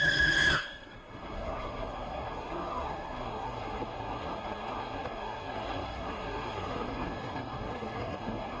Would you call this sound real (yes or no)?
no